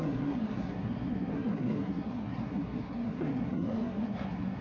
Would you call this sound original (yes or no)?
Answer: no